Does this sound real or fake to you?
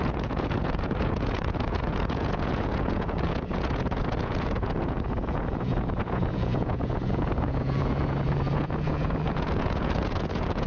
fake